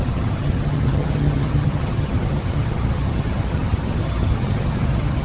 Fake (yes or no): yes